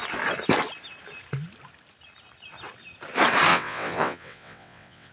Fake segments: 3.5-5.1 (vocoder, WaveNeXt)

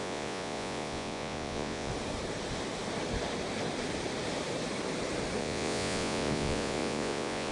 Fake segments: 0.0-1.9 (vocoder, Vocos); 5.4-7.5